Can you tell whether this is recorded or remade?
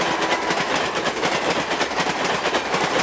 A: recorded